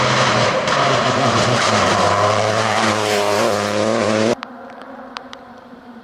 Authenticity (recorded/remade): remade